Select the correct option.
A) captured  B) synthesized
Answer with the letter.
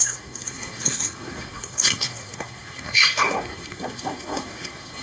B